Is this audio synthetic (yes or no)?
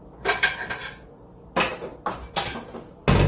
no